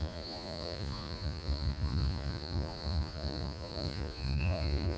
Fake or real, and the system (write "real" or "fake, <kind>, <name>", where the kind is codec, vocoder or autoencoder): fake, vocoder, Vocos